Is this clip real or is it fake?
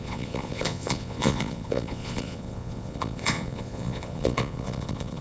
fake